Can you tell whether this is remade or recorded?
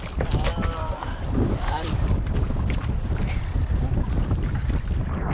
remade